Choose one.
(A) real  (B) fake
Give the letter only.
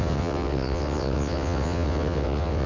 B